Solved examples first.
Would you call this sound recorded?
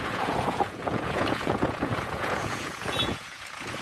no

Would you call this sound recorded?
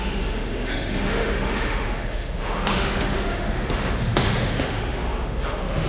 no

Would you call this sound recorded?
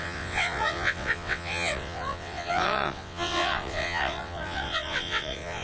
no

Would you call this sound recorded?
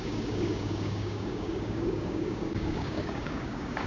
no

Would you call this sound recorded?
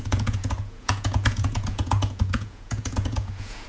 no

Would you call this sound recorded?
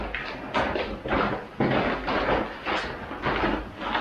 yes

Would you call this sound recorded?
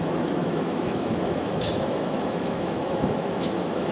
no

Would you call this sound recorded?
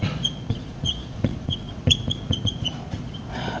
no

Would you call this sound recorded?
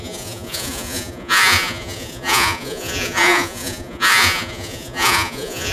no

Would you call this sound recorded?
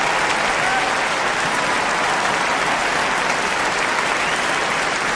yes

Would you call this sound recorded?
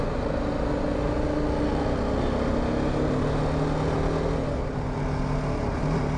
yes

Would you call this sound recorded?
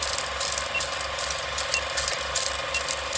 yes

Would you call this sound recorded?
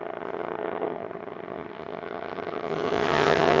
no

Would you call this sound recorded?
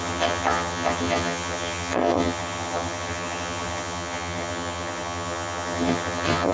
no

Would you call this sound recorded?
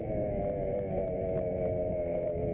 no